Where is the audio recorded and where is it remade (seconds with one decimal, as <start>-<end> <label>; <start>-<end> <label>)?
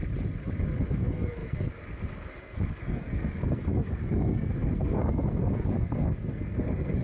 0.0-0.8 recorded; 0.8-7.0 remade